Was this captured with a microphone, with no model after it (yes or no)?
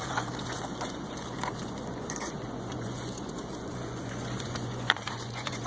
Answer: no